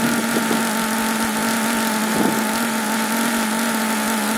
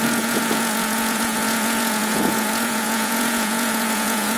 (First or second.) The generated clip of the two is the second